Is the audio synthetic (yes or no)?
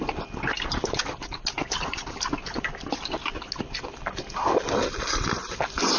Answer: no